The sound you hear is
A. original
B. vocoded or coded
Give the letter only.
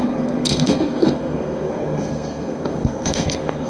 B